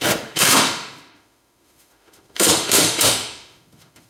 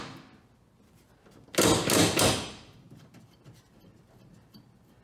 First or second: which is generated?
first